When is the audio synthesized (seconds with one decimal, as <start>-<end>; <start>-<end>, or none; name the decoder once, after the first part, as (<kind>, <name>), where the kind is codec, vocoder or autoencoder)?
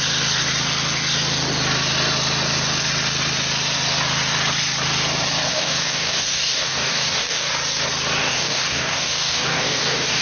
5.5-7.5 (codec, DAC); 8.2-10.2